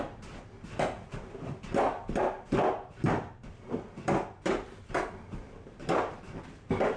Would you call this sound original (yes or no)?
no